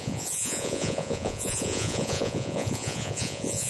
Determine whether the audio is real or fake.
fake